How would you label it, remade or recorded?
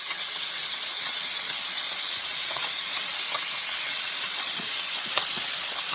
remade